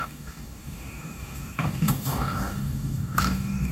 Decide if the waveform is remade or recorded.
remade